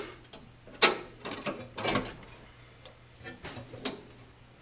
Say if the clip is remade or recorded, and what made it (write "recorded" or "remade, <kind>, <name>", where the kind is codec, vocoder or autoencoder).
recorded